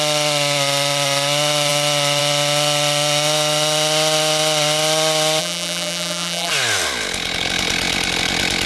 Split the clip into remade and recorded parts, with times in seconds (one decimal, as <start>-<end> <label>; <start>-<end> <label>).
0.0-5.4 recorded; 5.4-6.5 remade; 6.5-8.7 recorded